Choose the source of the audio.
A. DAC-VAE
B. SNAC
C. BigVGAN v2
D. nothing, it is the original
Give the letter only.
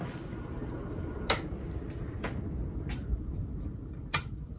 D